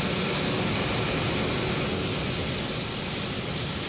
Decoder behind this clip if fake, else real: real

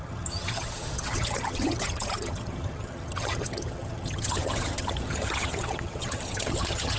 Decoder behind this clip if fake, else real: fake, vocoder, HiFi-GAN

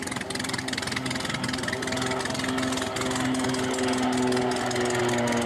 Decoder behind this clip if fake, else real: real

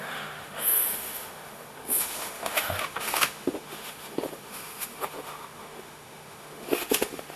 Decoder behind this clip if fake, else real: fake, autoencoder, DAC-VAE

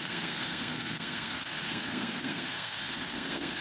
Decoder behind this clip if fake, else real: fake, codec, SNAC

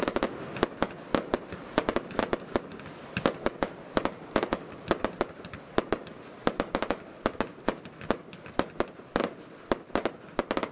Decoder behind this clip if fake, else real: real